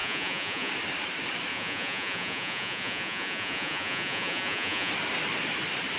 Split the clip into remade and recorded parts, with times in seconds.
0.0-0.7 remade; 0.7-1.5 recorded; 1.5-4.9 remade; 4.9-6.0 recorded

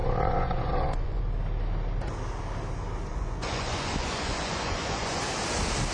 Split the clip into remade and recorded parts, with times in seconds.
0.0-1.2 remade; 1.2-3.1 recorded; 3.1-5.2 remade; 5.2-5.9 recorded

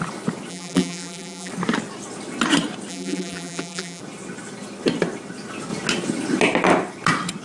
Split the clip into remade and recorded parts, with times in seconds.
0.0-0.5 recorded; 0.5-1.5 remade; 1.5-2.9 recorded; 2.9-4.0 remade; 4.0-7.4 recorded

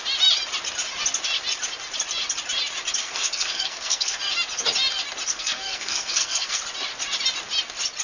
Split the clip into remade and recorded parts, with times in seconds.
0.0-3.0 recorded; 3.0-4.2 remade; 4.2-5.3 recorded; 5.3-6.6 remade; 6.6-8.0 recorded

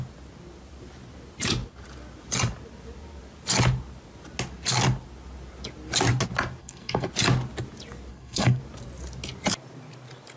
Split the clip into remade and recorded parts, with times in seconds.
0.0-6.6 recorded; 6.6-7.1 remade; 7.1-8.1 recorded; 8.1-8.6 remade; 8.6-10.4 recorded

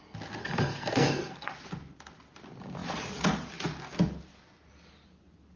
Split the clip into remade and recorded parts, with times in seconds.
0.0-0.4 recorded; 0.4-1.5 remade; 1.5-5.6 recorded

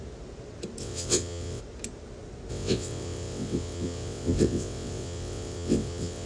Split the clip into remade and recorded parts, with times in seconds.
0.0-0.8 recorded; 0.8-1.6 remade; 1.6-2.5 recorded; 2.5-6.3 remade

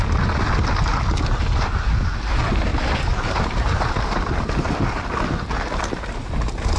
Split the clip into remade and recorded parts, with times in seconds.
0.0-6.8 recorded